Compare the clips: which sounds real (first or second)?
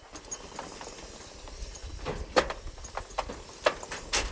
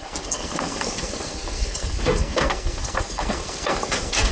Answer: first